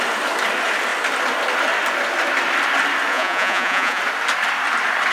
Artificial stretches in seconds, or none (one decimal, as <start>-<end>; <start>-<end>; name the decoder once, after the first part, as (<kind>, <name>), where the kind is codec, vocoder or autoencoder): 3.1-4.0 (vocoder, Vocos)